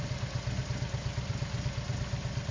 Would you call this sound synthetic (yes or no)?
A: no